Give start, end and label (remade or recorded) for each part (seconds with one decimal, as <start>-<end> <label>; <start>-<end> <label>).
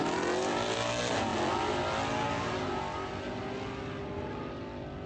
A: 0.0-5.1 recorded